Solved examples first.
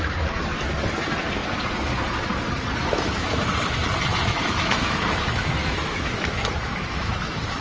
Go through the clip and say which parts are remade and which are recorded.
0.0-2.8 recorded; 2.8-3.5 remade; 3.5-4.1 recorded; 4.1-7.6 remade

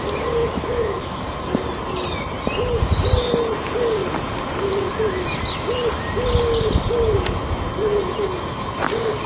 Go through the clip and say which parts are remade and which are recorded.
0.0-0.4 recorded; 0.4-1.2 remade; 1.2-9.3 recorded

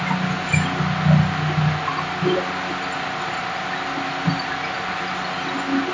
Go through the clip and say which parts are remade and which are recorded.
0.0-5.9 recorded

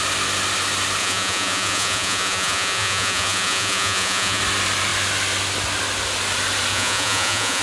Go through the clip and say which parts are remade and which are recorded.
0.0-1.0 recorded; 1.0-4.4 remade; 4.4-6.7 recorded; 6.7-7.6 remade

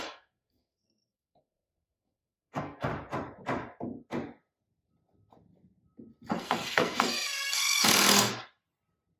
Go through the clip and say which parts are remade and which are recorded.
0.0-2.9 remade; 2.9-6.3 recorded; 6.3-8.3 remade; 8.3-9.2 recorded

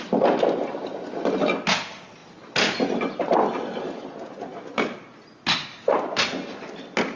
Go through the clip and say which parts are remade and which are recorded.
0.0-7.2 recorded